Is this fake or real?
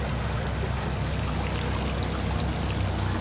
real